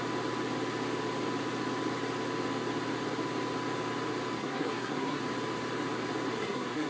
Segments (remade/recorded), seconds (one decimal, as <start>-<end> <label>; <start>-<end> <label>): 0.0-4.4 recorded; 4.4-5.2 remade; 5.2-6.4 recorded; 6.4-6.9 remade